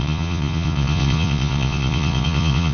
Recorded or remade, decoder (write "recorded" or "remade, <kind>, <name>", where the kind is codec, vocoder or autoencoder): remade, vocoder, Vocos